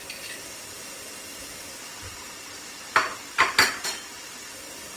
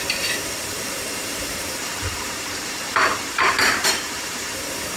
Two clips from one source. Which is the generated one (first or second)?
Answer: second